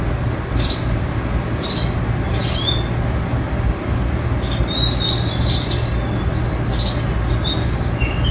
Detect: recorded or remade recorded